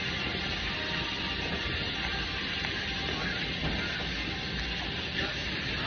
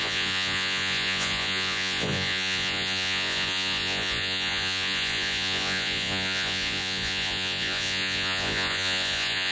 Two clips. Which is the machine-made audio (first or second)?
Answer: second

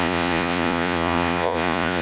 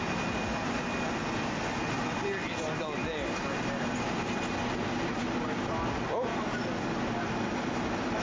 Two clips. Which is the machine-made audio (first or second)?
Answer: first